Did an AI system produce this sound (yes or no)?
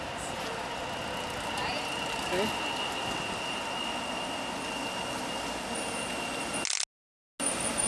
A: no